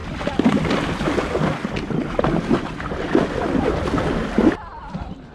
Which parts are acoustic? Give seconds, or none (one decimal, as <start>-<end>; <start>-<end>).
0.0-5.3